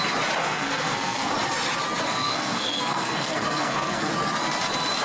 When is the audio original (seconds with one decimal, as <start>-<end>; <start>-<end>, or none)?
0.0-0.4; 1.3-2.1; 4.1-5.0